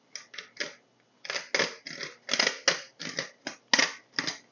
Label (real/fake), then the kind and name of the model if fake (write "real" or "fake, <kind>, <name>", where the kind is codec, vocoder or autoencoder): real